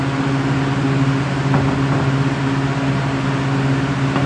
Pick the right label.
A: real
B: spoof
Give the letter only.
A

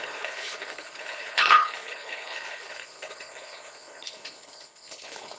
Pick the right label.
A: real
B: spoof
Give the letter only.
B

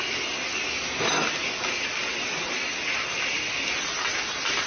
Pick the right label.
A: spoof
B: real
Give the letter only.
B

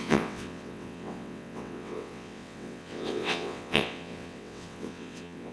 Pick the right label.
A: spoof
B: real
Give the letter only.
A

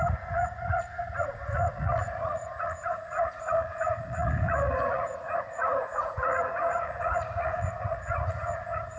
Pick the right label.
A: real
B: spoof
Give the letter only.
B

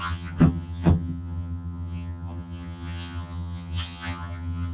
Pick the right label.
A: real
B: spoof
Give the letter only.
B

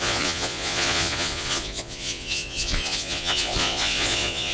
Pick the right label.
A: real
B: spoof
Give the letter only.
B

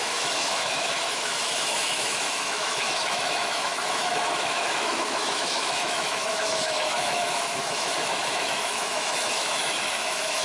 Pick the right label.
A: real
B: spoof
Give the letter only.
B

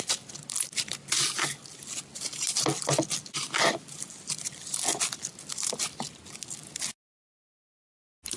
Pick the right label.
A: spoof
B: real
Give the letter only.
B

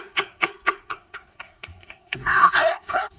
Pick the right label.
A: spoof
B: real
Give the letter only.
A